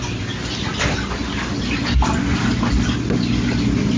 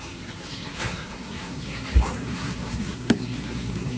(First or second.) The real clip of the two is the first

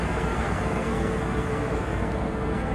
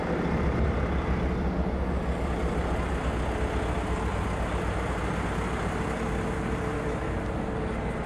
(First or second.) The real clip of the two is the second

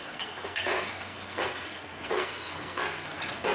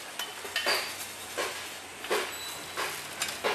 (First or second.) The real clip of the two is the second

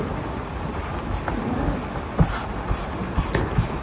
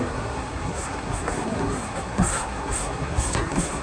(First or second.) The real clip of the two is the first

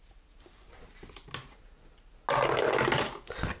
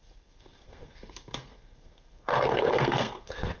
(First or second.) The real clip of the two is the first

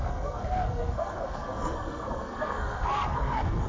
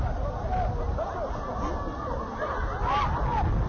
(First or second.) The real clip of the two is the second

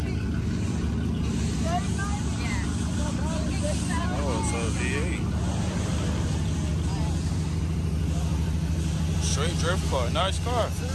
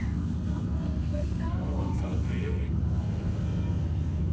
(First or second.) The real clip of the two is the first